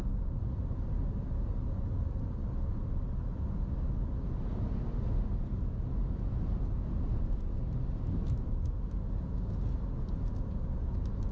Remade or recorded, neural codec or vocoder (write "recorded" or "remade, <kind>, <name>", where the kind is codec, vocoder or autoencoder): recorded